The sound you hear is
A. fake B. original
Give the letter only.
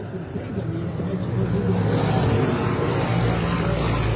B